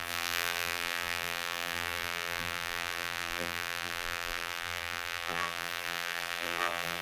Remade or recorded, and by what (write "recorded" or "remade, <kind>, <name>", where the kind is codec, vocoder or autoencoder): remade, vocoder, BigVGAN v2